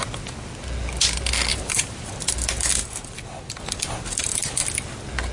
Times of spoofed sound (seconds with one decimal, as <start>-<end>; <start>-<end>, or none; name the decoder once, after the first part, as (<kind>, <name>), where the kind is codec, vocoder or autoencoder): 1.5-2.1 (vocoder, BigVGAN v2)